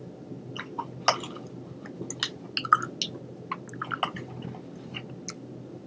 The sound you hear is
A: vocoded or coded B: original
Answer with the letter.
B